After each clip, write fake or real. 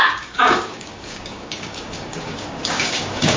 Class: fake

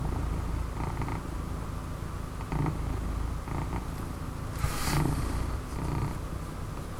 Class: real